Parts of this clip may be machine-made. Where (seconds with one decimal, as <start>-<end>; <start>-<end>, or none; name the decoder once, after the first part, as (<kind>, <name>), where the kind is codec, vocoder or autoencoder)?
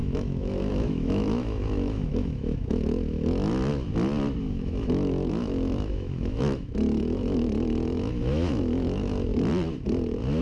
0.0-3.7 (autoencoder, DAC-VAE); 4.4-9.3